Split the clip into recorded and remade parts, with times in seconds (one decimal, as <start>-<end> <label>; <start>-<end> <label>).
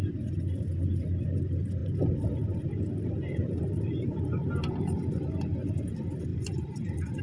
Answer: 0.0-3.6 recorded; 3.6-4.4 remade; 4.4-6.3 recorded; 6.3-7.2 remade